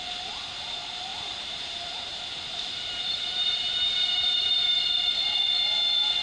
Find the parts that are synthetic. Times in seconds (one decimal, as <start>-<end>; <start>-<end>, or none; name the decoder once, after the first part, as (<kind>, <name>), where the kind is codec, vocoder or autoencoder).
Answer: 1.1-4.8 (vocoder, BigVGAN v2)

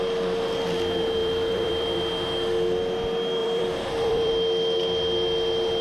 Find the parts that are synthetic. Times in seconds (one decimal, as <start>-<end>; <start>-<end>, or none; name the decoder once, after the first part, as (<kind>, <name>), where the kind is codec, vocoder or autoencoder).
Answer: 1.2-2.0 (vocoder, BigVGAN v2); 3.4-4.3

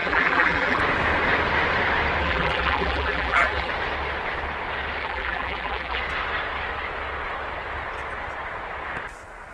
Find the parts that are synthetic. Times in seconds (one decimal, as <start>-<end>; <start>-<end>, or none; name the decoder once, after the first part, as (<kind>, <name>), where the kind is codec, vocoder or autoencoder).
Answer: 0.0-0.8 (vocoder, BigVGAN v2); 2.2-3.7; 5.0-6.0

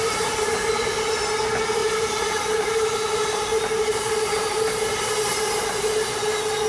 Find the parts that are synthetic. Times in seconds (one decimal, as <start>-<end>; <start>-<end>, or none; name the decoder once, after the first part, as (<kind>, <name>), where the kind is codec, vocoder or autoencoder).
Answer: 0.0-1.2 (vocoder, BigVGAN v2); 1.8-5.0